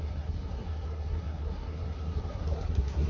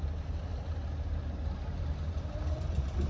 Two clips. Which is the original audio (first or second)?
second